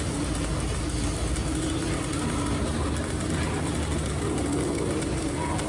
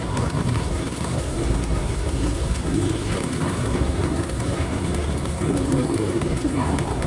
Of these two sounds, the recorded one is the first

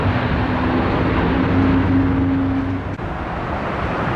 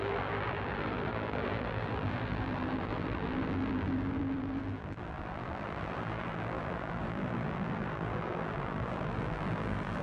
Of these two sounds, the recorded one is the first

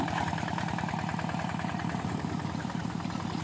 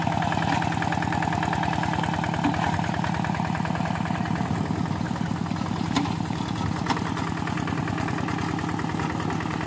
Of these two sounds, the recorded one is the second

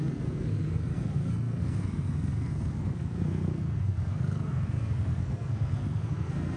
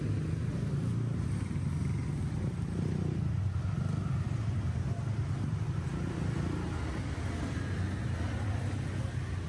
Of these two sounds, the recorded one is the second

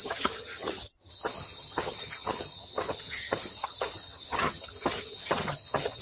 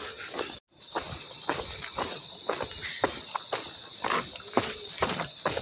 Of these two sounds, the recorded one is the second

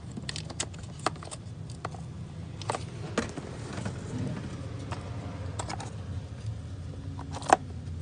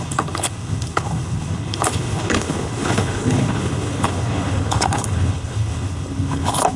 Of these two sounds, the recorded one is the first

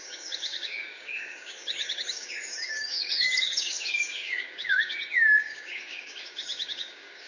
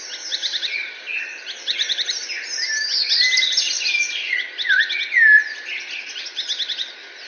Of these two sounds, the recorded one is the second